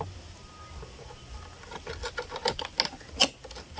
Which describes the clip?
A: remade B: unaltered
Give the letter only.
B